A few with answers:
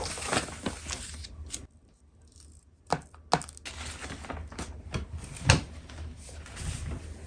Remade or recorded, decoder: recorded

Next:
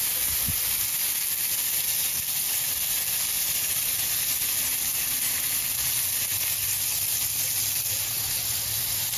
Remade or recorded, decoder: recorded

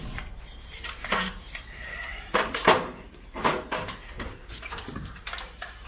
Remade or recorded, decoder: remade, vocoder, BigVGAN v2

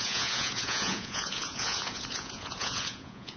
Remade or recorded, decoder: remade, vocoder, Vocos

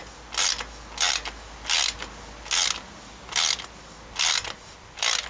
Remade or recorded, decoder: recorded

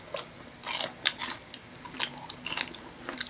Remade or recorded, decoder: recorded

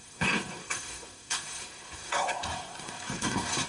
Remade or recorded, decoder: remade, codec, SNAC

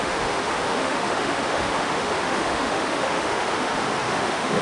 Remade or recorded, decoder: remade, autoencoder, DAC-VAE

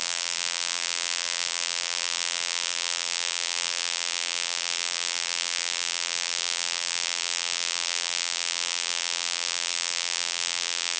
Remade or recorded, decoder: remade, vocoder, BigVGAN v2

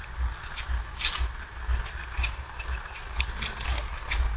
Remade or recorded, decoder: recorded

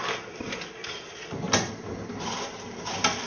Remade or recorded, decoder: recorded